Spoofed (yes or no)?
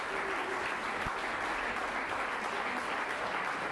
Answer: no